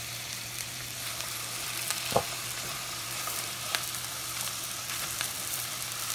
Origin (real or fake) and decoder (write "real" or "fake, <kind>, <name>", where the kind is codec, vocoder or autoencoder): fake, vocoder, BigVGAN v2